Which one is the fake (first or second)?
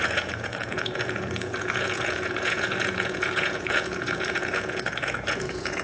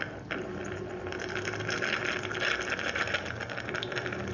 first